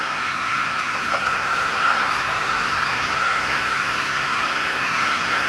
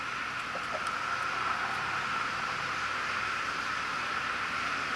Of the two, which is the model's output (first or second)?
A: first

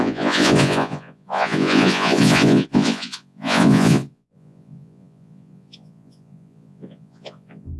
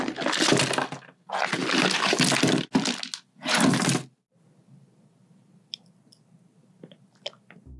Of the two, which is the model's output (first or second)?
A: first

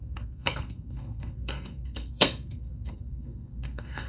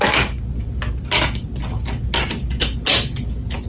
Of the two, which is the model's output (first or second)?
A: first